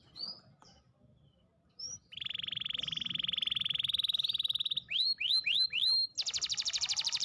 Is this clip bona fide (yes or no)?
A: no